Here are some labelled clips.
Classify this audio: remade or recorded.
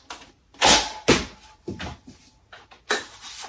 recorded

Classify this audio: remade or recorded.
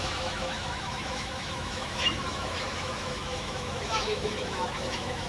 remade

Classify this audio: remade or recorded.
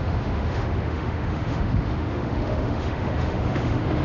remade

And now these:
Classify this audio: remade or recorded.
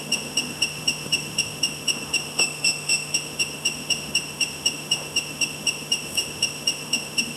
remade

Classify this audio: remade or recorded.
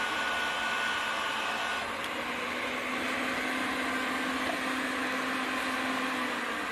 recorded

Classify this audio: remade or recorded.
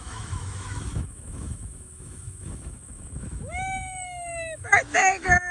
remade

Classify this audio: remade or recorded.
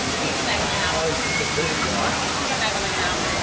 recorded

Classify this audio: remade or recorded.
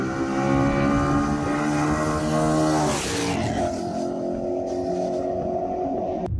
recorded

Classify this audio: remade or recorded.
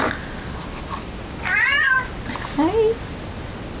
recorded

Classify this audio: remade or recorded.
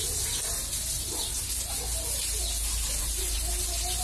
recorded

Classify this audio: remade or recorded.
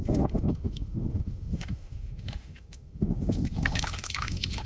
remade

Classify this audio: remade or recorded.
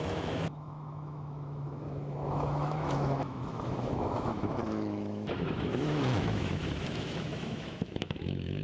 remade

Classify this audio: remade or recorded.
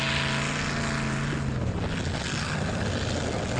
recorded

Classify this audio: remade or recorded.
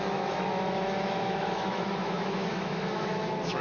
remade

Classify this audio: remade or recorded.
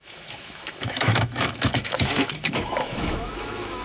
remade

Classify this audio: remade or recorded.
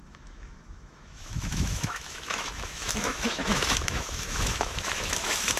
remade